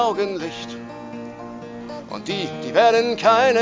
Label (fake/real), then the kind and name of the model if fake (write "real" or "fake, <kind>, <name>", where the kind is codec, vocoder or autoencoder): real